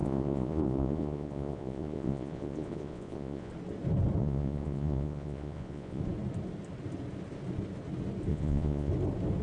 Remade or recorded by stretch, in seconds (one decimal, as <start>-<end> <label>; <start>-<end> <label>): 0.0-3.5 remade; 3.5-4.2 recorded; 4.2-6.0 remade; 6.0-8.3 recorded; 8.3-8.9 remade; 8.9-9.4 recorded